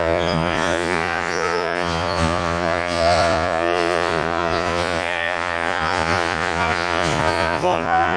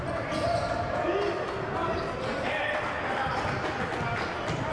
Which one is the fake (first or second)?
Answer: first